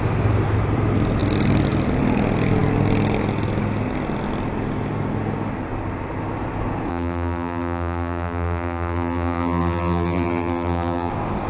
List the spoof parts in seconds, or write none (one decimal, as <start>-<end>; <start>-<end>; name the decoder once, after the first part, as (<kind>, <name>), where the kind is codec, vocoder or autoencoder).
6.9-11.1 (vocoder, BigVGAN v2)